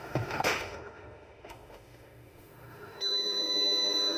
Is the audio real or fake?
fake